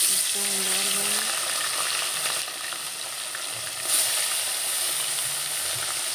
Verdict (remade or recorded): recorded